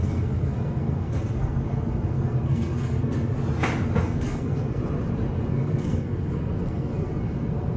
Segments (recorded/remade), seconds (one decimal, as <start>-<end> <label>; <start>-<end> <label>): 0.0-3.3 remade; 3.3-4.0 recorded; 4.0-4.8 remade; 4.8-5.5 recorded; 5.5-7.8 remade